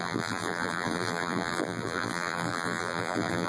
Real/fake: fake